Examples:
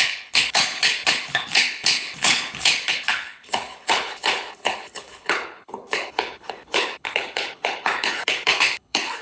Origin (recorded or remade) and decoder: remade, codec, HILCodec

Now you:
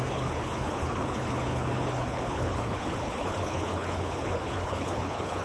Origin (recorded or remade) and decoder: remade, codec, HILCodec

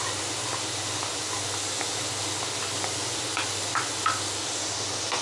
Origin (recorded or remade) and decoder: recorded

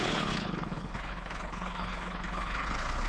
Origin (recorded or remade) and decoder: remade, codec, HILCodec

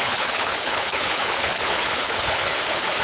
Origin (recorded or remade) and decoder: remade, codec, HILCodec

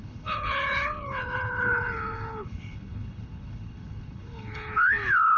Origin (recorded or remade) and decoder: remade, codec, HILCodec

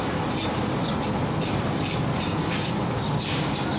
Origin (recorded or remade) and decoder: recorded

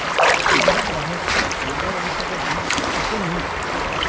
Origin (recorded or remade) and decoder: recorded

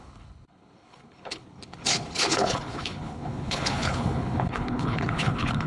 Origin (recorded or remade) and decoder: remade, codec, HILCodec